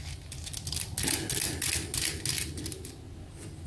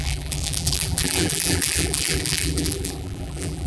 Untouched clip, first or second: first